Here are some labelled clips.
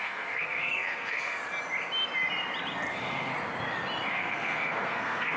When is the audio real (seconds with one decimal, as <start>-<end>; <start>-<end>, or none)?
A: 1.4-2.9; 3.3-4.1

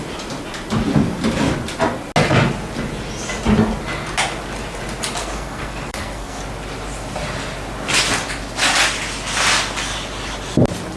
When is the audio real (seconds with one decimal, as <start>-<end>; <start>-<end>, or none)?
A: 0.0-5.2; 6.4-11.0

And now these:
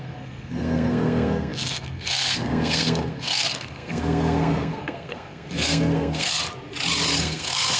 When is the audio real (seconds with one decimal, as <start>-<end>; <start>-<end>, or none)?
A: 6.4-7.2

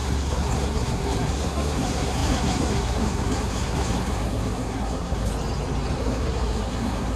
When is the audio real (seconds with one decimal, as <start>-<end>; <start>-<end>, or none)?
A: 5.3-6.0